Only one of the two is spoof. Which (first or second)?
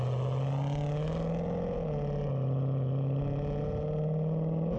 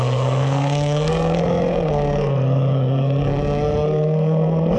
second